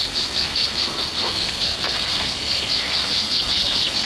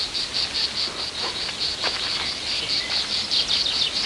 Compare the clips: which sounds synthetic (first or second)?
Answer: first